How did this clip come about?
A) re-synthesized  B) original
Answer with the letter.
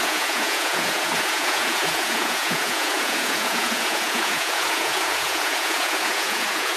A